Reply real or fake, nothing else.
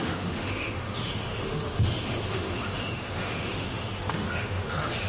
fake